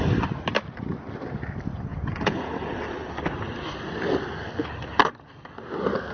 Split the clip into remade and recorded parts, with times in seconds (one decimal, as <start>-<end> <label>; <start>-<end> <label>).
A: 0.0-1.9 recorded; 1.9-2.5 remade; 2.5-6.1 recorded